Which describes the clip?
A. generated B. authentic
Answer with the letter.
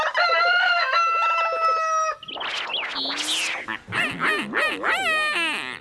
B